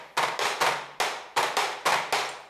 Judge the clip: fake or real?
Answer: real